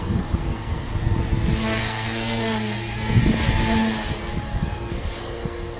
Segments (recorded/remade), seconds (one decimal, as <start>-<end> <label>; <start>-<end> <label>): 0.0-0.9 remade; 0.9-1.8 recorded; 1.8-3.2 remade; 3.2-4.4 recorded; 4.4-5.8 remade